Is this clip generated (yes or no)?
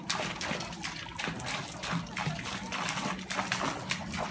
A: no